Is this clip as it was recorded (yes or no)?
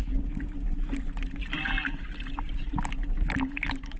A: yes